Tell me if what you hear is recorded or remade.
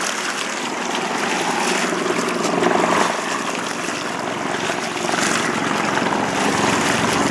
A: recorded